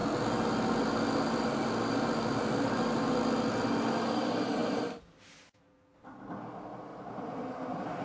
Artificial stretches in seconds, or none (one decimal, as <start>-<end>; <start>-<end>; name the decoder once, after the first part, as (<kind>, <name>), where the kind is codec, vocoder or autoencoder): 6.9-7.6 (vocoder, BigVGAN v2)